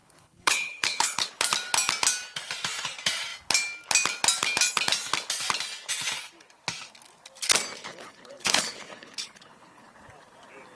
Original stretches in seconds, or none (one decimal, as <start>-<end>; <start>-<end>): 1.4-7.9; 9.8-10.7